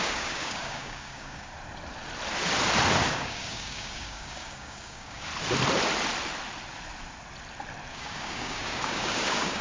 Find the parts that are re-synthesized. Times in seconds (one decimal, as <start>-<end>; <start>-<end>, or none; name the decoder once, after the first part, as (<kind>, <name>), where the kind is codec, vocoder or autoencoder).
0.0-1.5 (codec, DAC); 3.1-5.3; 7.9-9.6